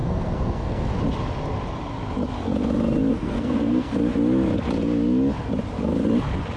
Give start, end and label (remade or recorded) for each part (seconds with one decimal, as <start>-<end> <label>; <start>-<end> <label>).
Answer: 0.0-1.0 remade; 1.0-3.1 recorded; 3.1-3.9 remade; 3.9-6.6 recorded

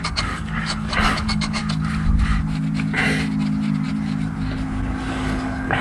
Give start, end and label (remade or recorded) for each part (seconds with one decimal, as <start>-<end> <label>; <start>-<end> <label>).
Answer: 0.0-1.6 remade; 1.6-5.1 recorded; 5.1-5.8 remade

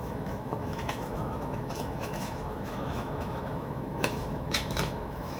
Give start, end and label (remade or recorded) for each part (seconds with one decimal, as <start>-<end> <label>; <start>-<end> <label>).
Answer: 0.0-5.4 remade

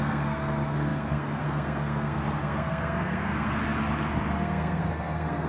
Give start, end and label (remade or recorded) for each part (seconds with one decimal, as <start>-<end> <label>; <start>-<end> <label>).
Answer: 0.0-3.6 remade; 3.6-4.3 recorded; 4.3-5.5 remade

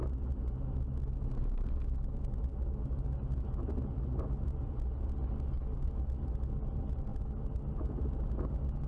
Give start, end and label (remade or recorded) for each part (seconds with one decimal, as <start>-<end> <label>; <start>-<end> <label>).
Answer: 0.0-8.9 recorded

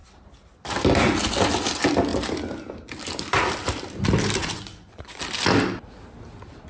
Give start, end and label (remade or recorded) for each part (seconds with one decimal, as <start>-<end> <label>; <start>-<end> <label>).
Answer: 0.0-4.4 recorded; 4.4-5.2 remade; 5.2-6.7 recorded

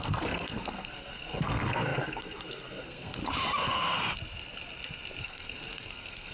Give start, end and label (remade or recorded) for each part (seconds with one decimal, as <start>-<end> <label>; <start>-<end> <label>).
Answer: 0.0-3.2 remade; 3.2-5.2 recorded; 5.2-6.3 remade